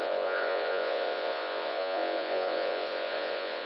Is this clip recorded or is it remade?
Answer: remade